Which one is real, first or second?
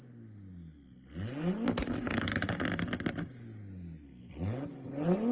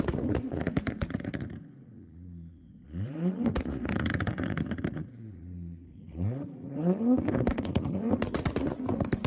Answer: first